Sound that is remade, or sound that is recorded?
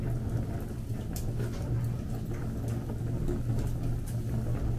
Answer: recorded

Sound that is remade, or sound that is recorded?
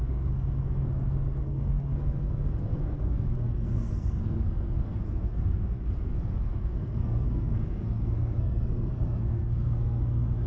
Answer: remade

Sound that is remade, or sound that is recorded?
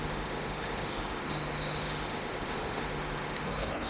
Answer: remade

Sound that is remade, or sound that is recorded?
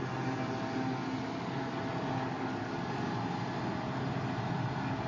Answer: recorded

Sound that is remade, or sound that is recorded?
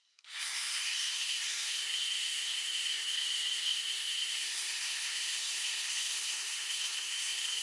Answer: remade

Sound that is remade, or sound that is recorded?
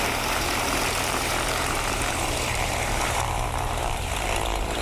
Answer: remade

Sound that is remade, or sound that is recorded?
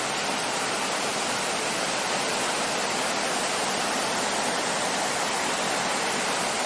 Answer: recorded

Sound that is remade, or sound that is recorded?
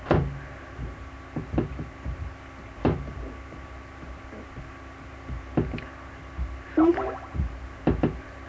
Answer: recorded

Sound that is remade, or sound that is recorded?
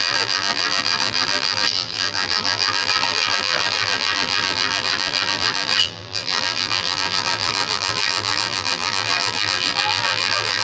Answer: remade